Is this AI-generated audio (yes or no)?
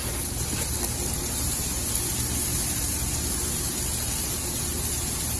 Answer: no